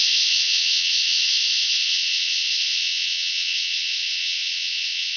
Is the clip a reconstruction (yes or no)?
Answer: yes